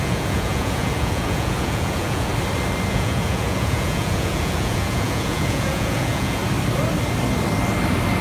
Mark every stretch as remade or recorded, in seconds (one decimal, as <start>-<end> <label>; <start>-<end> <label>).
0.0-2.3 remade; 2.3-2.9 recorded; 2.9-6.4 remade; 6.4-8.2 recorded